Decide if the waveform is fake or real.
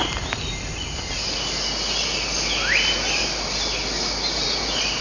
real